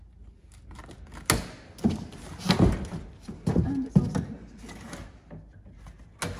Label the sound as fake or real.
real